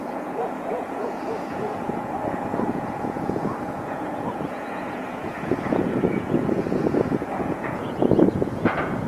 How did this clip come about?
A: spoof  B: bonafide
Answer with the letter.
A